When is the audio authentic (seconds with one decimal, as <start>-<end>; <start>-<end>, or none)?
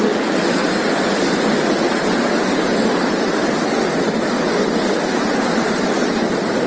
0.0-6.7